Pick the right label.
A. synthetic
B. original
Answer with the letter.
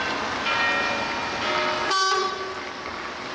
B